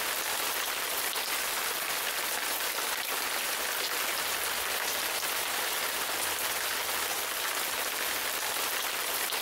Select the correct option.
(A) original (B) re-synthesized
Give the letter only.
A